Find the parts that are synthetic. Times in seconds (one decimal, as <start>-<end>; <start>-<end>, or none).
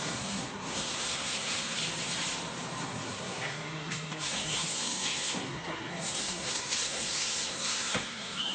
0.0-1.8; 2.8-8.5